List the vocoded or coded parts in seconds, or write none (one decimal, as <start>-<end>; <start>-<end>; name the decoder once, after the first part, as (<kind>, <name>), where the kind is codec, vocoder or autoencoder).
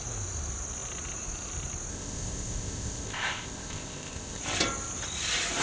1.9-4.4 (codec, ZipCodec)